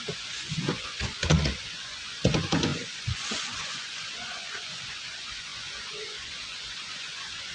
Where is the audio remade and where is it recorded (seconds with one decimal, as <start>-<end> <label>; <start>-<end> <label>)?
0.0-7.5 remade